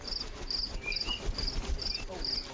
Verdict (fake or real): real